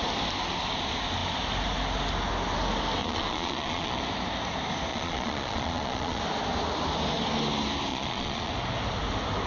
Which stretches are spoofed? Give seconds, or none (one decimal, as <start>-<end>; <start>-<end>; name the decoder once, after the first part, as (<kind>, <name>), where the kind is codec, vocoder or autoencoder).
3.0-4.0 (vocoder, Vocos); 4.9-6.2; 7.9-8.5